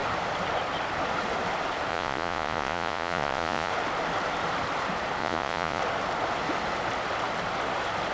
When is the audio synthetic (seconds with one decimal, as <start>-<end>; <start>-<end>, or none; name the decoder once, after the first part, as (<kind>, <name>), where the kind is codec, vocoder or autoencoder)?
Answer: 1.9-3.7 (vocoder, Vocos); 5.2-5.8

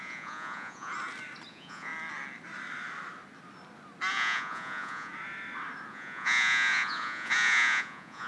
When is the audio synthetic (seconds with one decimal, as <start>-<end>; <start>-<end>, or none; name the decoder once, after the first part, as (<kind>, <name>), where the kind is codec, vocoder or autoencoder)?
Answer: 0.0-0.9 (vocoder, Vocos); 1.5-1.9; 4.1-5.1; 5.9-8.3

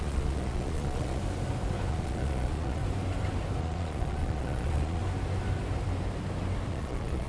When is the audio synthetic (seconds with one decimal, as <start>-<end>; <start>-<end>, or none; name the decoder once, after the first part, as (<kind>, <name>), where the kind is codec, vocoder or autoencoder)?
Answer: 0.0-1.2 (vocoder, Vocos); 1.9-2.8; 3.6-5.0; 6.7-7.3

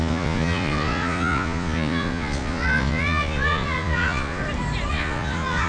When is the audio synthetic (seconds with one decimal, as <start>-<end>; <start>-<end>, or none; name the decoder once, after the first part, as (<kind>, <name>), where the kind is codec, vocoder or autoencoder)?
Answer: 0.0-4.4 (vocoder, Vocos); 4.9-5.7

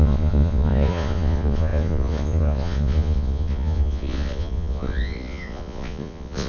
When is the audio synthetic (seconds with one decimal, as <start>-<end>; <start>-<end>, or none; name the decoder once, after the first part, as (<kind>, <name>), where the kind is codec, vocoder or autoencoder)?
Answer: 0.0-6.5 (vocoder, Vocos)

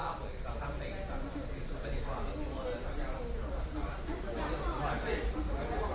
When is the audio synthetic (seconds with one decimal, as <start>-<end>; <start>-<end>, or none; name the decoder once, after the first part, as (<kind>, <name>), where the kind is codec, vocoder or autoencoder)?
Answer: none